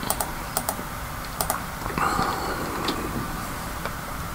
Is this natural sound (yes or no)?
no